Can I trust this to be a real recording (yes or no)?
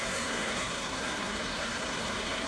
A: no